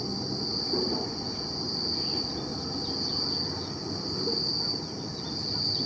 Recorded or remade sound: recorded